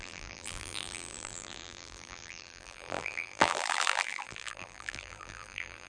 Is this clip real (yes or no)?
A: no